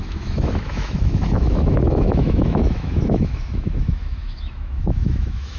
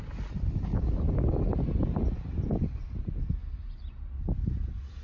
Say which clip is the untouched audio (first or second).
second